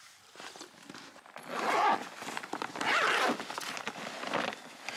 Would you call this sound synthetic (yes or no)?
no